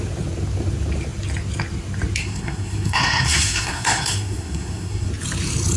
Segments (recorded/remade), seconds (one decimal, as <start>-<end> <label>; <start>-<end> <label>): 0.0-2.2 recorded; 2.2-5.1 remade; 5.1-5.8 recorded